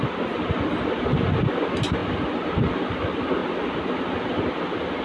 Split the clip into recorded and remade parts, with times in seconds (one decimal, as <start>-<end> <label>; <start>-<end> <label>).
0.0-5.0 recorded

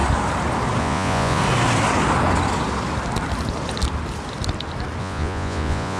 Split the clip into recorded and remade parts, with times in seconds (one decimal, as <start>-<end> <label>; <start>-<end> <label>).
0.0-0.8 recorded; 0.8-1.4 remade; 1.4-5.0 recorded; 5.0-6.0 remade

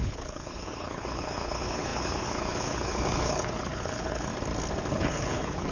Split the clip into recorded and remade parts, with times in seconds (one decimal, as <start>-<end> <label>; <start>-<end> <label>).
0.0-4.3 remade; 4.3-4.9 recorded; 4.9-5.7 remade